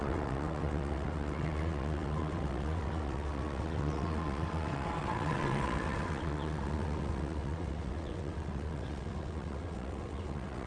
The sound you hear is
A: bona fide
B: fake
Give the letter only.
B